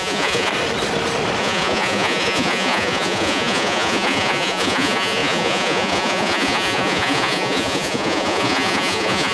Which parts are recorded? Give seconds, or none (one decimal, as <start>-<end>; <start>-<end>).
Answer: 0.5-1.4